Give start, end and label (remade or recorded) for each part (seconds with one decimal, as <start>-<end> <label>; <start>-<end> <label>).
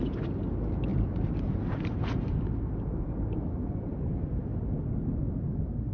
0.0-0.9 recorded; 0.9-2.4 remade; 2.4-5.9 recorded